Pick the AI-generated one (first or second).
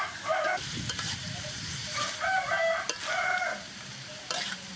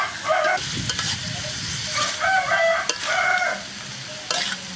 first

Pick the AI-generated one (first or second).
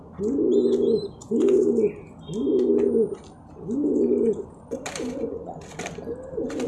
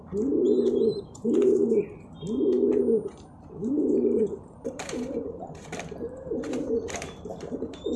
second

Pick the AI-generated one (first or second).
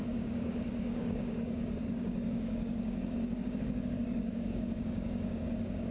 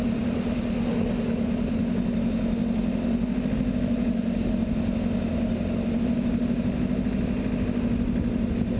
first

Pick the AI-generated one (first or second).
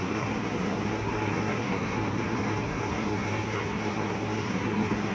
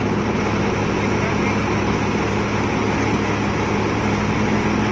first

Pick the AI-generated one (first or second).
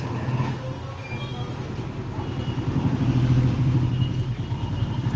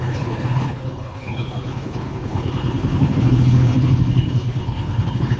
second